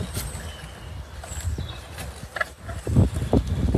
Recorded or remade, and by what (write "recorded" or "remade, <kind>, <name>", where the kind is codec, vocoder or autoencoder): recorded